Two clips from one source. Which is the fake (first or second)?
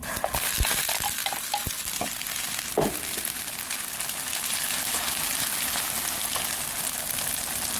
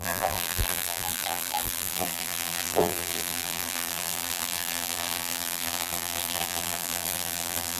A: second